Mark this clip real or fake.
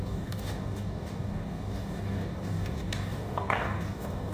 fake